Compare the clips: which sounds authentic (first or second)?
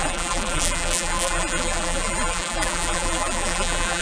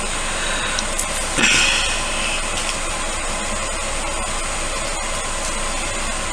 second